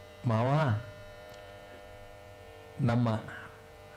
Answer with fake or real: fake